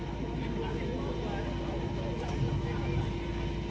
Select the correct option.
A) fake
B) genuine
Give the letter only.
B